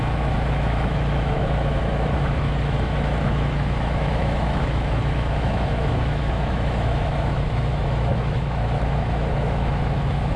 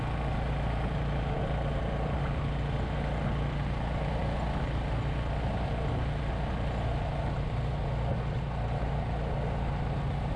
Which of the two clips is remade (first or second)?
first